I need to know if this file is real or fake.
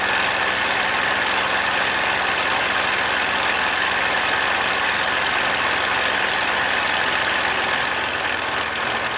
real